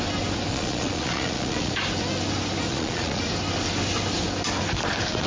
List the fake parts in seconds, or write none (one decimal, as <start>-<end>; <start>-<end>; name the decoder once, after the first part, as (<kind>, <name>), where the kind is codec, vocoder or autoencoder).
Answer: 0.5-1.7 (vocoder, Vocos); 2.7-3.2